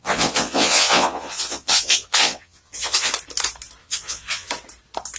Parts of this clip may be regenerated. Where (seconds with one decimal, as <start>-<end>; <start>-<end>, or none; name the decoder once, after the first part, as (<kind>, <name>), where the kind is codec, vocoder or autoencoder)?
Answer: 0.0-3.1 (vocoder, Vocos); 3.8-4.5